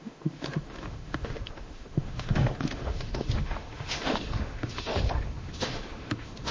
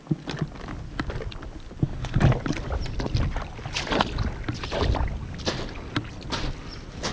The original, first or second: second